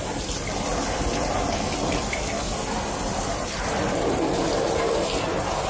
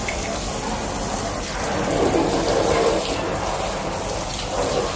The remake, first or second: first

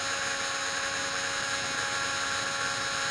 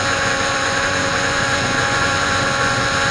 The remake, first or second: second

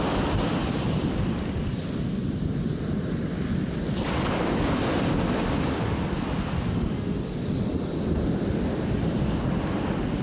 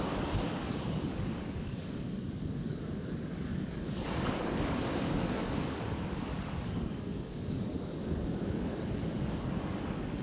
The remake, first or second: second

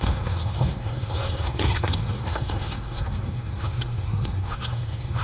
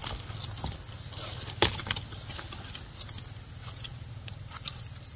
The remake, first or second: first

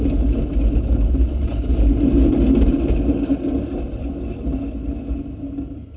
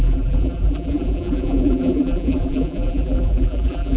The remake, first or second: second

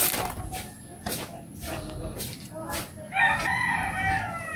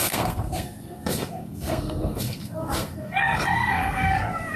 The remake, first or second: second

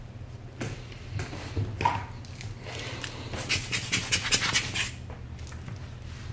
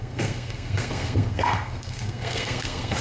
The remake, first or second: second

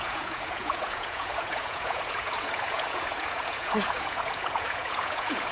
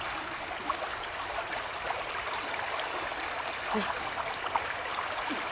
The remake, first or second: first